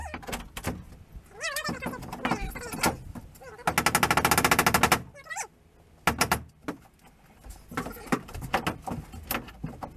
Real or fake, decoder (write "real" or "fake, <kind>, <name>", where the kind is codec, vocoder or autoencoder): real